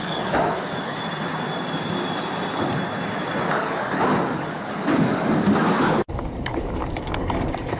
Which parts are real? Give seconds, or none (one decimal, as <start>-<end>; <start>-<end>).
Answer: 1.0-3.5

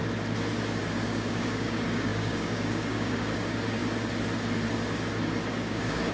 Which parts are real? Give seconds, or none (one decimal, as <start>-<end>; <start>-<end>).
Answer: 0.0-0.8; 3.8-5.5

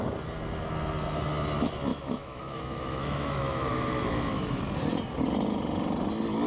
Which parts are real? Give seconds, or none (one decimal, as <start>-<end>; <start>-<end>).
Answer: 0.0-1.9; 4.6-6.5

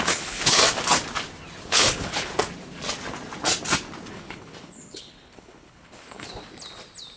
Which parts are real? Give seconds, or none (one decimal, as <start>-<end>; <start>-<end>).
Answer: 0.6-1.7; 2.3-4.1; 6.4-7.2

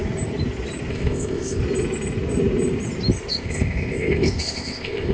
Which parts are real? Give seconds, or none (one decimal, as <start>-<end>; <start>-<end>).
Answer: 0.0-0.9; 1.6-3.3

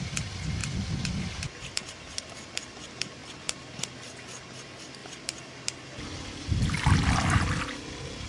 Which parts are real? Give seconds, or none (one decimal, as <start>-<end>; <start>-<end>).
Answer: 0.0-8.3